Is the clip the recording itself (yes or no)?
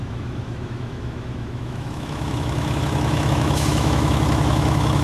no